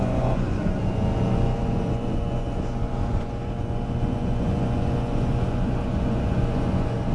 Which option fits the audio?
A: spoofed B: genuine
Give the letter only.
A